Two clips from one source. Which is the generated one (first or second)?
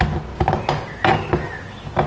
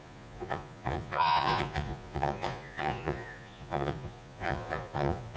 second